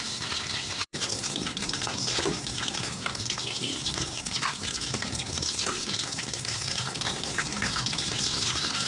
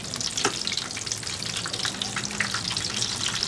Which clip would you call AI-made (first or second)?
first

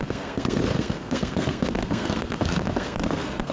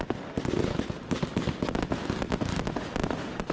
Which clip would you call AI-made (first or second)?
first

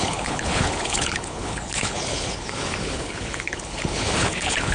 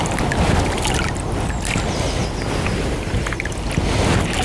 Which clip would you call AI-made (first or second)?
first